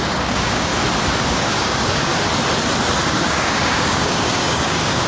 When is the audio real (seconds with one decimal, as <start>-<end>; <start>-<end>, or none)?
0.7-1.3; 2.1-3.1